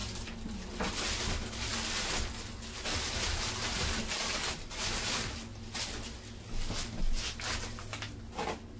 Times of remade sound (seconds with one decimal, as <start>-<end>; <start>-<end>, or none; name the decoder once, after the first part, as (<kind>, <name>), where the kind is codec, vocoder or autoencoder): none